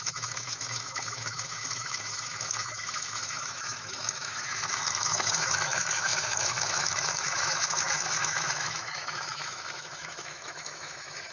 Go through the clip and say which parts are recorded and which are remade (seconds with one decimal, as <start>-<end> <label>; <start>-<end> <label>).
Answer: 0.0-11.3 remade